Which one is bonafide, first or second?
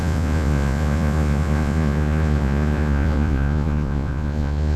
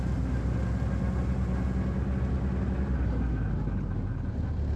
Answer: second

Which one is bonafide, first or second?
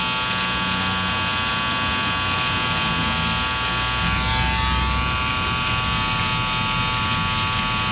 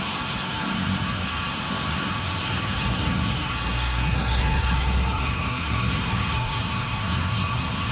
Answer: first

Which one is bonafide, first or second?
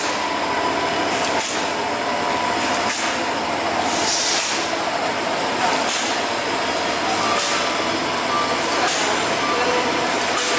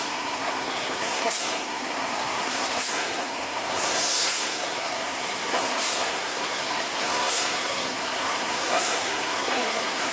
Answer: first